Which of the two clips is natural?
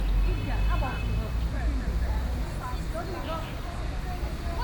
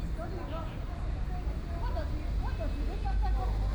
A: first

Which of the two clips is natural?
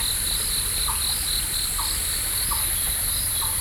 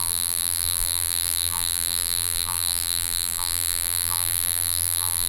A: first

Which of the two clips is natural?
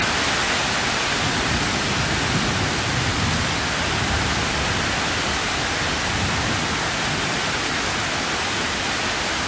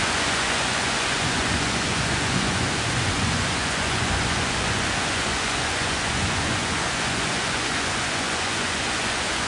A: first